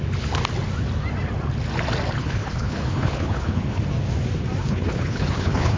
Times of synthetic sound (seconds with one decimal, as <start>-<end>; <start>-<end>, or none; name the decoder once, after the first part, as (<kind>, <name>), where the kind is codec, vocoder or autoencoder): 2.2-3.8 (codec, HILCodec); 4.6-5.8